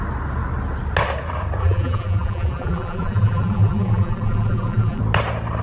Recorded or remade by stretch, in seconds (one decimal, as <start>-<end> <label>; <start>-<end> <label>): 0.0-1.6 recorded; 1.6-5.0 remade; 5.0-5.6 recorded